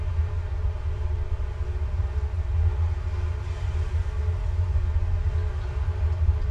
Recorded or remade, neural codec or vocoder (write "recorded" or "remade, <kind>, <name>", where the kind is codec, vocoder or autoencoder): recorded